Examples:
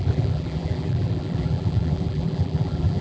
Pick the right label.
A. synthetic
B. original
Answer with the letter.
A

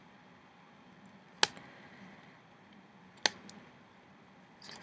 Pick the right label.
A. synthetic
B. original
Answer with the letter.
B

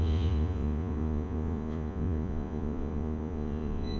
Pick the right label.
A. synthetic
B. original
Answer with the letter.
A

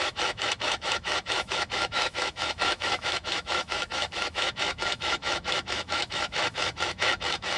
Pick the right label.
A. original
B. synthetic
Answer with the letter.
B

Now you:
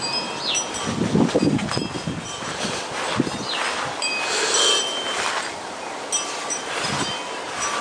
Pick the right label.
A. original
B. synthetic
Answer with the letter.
A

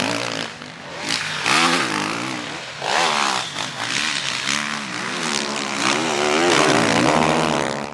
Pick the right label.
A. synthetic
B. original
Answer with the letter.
B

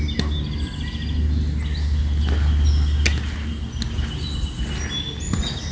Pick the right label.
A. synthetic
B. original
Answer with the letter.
B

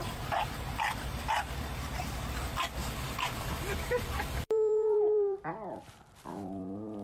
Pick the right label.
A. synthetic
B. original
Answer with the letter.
A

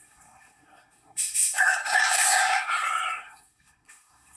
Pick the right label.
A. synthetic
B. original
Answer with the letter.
A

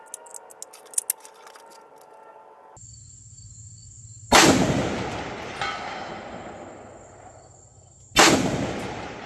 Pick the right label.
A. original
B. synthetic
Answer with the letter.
A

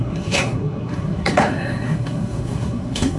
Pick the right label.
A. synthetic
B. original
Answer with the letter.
A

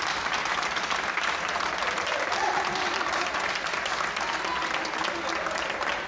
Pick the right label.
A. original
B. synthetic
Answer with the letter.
A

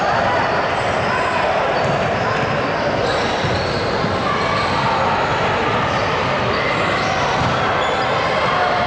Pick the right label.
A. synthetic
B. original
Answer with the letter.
B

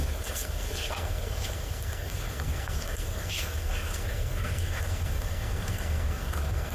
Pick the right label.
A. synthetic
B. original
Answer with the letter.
A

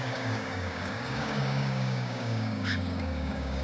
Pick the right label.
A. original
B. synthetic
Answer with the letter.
B